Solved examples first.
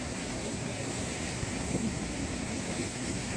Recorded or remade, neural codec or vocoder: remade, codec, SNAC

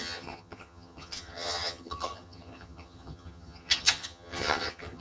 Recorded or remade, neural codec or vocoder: remade, vocoder, HiFi-GAN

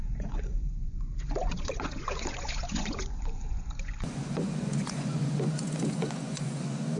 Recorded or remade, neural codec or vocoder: remade, vocoder, Vocos